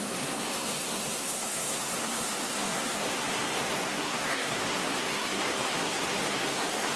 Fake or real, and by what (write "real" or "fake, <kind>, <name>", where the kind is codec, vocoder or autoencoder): fake, codec, SNAC